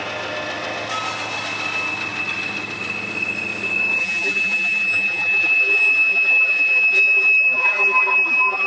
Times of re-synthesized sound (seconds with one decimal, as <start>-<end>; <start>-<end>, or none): 4.0-8.7